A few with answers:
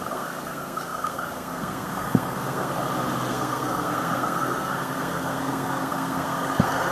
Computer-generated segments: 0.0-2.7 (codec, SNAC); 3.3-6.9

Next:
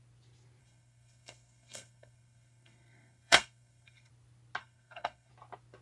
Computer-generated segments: 0.6-4.1 (codec, SNAC); 4.6-5.3

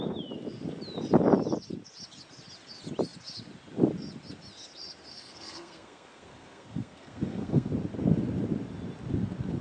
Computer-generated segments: 5.1-7.7 (codec, SNAC)

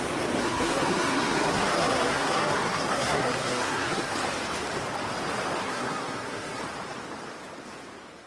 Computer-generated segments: 0.4-4.1 (codec, SNAC); 5.6-6.6